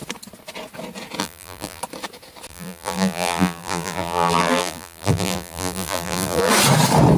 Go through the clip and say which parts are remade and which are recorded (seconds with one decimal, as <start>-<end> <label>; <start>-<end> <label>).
0.0-1.2 recorded; 1.2-1.8 remade; 1.8-2.5 recorded; 2.5-6.5 remade; 6.5-7.2 recorded